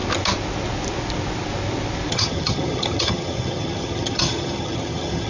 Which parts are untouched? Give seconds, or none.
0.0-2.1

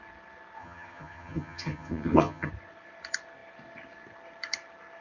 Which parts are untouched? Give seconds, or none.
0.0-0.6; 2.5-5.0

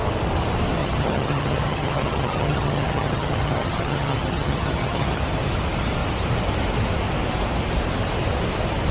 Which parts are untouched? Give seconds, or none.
0.0-0.8; 5.2-8.9

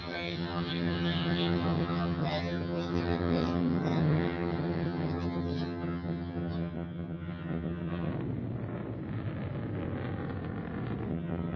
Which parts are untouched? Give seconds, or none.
8.1-11.1

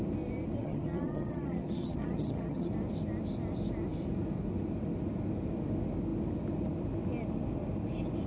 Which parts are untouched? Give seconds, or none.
0.0-0.6; 2.7-8.3